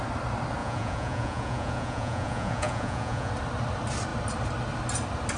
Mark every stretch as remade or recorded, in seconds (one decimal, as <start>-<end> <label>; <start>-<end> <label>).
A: 0.0-0.6 recorded; 0.6-3.3 remade; 3.3-5.4 recorded